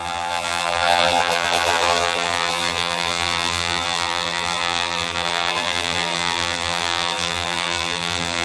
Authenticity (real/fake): fake